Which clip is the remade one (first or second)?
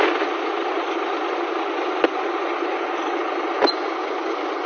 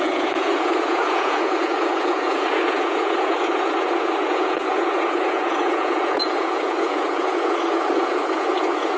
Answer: second